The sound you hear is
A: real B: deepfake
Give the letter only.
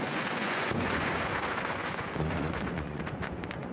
B